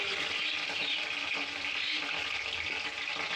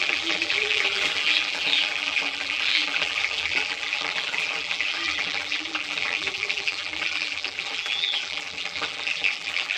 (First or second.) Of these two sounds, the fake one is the second